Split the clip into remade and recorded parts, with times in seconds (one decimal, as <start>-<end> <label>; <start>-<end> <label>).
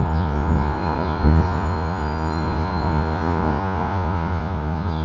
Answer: 0.0-5.0 remade